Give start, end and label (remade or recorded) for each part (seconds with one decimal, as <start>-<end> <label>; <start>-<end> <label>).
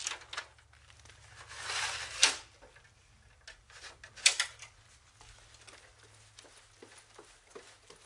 0.0-8.1 recorded